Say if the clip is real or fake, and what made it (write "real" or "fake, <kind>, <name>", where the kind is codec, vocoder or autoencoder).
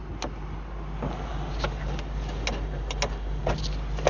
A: real